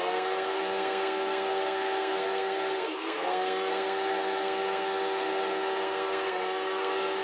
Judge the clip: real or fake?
fake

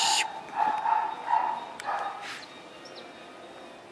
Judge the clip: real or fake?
real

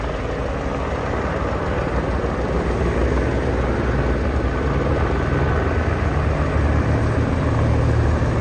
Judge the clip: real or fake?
real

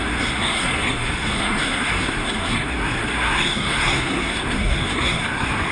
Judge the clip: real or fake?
fake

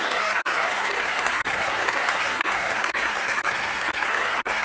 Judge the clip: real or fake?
fake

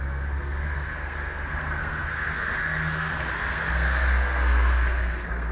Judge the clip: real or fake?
fake